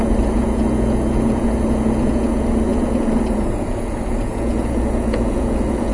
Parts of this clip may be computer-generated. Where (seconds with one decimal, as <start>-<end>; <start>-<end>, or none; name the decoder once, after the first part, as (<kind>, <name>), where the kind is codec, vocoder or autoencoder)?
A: 0.0-5.9 (vocoder, Vocos)